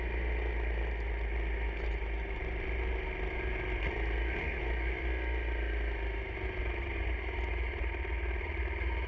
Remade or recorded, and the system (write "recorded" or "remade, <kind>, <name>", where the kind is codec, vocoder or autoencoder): recorded